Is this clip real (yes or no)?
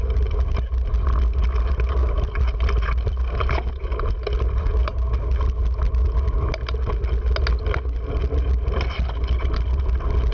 yes